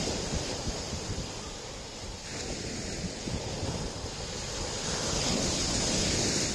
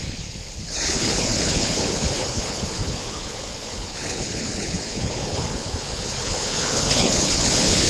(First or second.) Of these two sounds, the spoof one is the second